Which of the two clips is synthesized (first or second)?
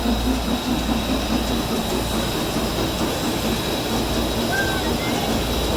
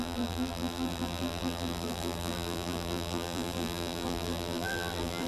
second